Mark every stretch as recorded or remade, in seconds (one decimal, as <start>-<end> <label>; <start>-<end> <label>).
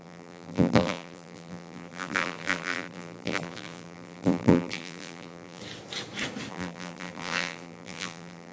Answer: 0.0-5.6 remade; 5.6-6.5 recorded; 6.5-8.5 remade